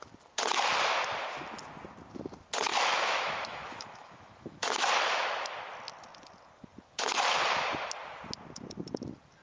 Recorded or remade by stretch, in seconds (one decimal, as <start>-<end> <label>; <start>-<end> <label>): 0.0-2.7 recorded; 2.7-4.9 remade; 4.9-9.4 recorded